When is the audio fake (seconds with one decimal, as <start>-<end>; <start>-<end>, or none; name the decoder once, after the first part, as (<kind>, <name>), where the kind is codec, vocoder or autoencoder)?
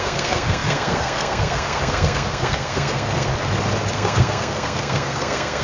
0.0-3.3 (codec, SNAC); 3.9-5.6